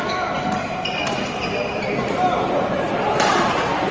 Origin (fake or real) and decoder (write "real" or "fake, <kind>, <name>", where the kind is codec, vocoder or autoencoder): real